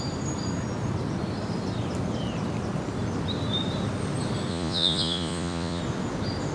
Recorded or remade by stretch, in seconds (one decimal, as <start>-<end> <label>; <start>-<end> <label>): 0.0-4.5 recorded; 4.5-5.8 remade; 5.8-6.5 recorded